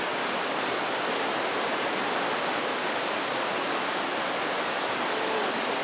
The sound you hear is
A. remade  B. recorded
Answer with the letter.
B